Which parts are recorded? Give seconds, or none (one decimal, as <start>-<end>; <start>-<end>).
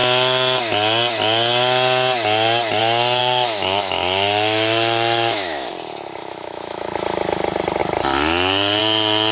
0.0-3.2; 5.7-6.2; 6.9-9.3